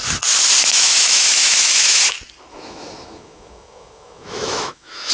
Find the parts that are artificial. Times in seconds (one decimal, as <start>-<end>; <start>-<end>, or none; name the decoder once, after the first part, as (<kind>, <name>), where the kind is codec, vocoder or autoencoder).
0.6-2.0 (autoencoder, DAC-VAE); 2.5-5.1